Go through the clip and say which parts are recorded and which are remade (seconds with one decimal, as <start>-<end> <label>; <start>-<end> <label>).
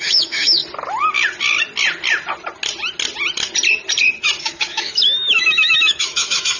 0.0-0.6 remade; 0.6-4.4 recorded; 4.4-6.6 remade